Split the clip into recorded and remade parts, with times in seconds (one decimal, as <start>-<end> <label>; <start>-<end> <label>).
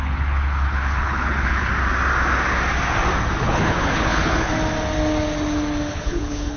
0.0-1.7 remade; 1.7-3.4 recorded; 3.4-4.5 remade; 4.5-5.9 recorded; 5.9-6.6 remade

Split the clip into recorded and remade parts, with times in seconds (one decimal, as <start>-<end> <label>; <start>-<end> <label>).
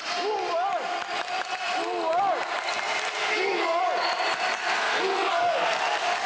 0.0-3.2 recorded; 3.2-3.8 remade; 3.8-4.6 recorded; 4.6-6.3 remade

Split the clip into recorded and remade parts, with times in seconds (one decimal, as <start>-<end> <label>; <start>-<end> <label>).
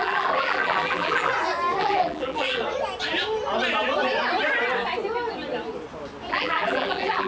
0.0-1.3 remade; 1.3-1.8 recorded; 1.8-2.6 remade; 2.6-6.3 recorded; 6.3-7.3 remade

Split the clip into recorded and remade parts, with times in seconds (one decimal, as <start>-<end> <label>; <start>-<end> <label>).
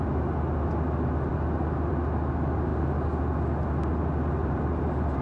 0.0-4.4 recorded; 4.4-5.2 remade